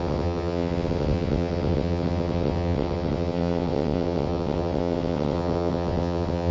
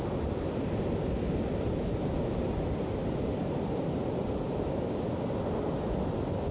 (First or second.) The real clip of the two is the second